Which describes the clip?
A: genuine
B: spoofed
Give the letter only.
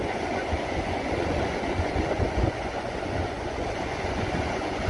B